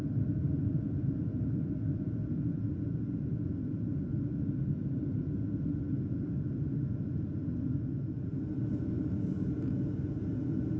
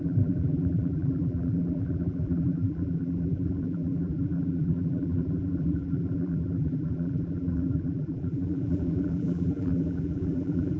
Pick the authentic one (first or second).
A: first